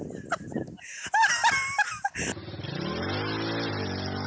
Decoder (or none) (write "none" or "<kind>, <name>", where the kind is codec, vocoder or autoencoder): none